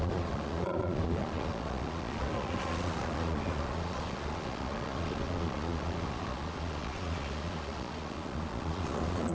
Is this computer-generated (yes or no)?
yes